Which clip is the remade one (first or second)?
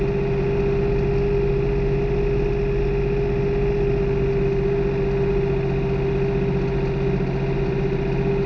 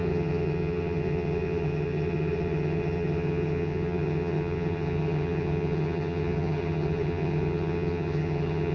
second